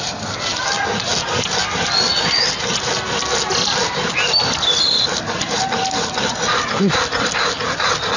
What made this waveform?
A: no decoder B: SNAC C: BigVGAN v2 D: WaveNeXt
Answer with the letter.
A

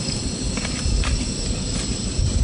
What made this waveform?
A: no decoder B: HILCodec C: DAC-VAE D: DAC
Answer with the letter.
A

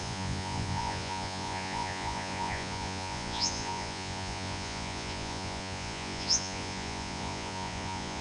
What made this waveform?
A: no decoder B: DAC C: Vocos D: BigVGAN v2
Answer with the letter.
C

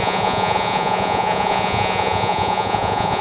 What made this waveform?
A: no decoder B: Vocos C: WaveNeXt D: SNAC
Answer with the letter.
B